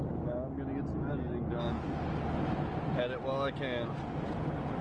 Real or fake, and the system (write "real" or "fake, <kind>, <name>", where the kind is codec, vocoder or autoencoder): real